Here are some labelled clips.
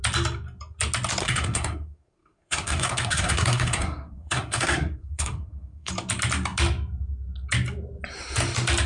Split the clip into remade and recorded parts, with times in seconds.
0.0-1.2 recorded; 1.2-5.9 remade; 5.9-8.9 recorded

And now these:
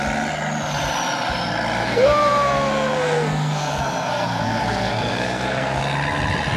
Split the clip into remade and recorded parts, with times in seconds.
0.0-1.8 recorded; 1.8-5.8 remade; 5.8-6.6 recorded

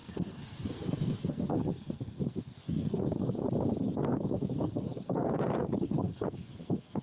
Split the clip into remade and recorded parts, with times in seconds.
0.0-3.4 remade; 3.4-4.0 recorded; 4.0-7.0 remade

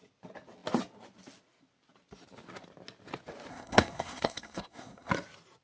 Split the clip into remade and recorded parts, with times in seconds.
0.0-3.5 recorded; 3.5-5.1 remade; 5.1-5.6 recorded

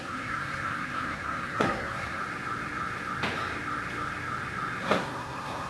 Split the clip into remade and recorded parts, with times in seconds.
0.0-2.2 remade; 2.2-4.8 recorded; 4.8-5.7 remade